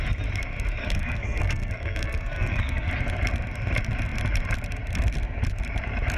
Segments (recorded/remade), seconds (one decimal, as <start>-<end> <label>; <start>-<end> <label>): 0.0-0.8 recorded; 0.8-2.9 remade; 2.9-6.2 recorded